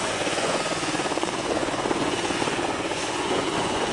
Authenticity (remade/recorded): remade